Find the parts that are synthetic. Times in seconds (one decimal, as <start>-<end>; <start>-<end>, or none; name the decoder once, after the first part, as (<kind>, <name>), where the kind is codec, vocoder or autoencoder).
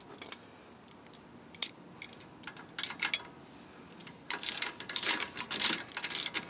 4.0-5.9 (vocoder, BigVGAN v2)